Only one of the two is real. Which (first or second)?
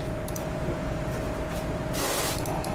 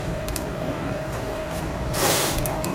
first